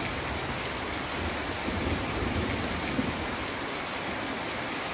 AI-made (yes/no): no